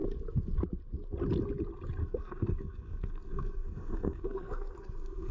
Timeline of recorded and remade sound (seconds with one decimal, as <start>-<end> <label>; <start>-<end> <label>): 0.0-2.0 recorded; 2.0-5.3 remade

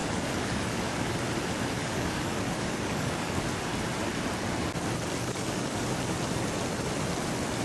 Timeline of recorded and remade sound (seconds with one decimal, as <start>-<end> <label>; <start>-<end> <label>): 0.0-1.1 remade; 1.1-1.8 recorded; 1.8-3.4 remade; 3.4-5.2 recorded; 5.2-5.8 remade; 5.8-7.6 recorded

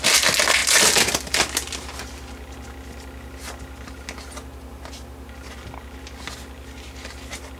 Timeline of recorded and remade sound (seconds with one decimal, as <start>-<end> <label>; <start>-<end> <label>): 0.0-7.6 recorded

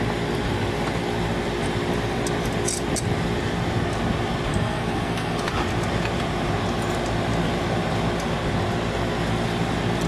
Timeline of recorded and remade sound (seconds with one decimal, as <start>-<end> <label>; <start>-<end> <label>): 0.0-4.5 recorded; 4.5-5.4 remade; 5.4-10.1 recorded